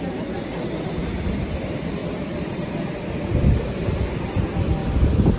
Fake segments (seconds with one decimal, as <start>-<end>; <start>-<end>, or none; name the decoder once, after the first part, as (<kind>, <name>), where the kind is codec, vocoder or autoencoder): none